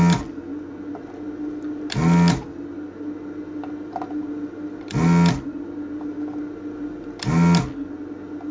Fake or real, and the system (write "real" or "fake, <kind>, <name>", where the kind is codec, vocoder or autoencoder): real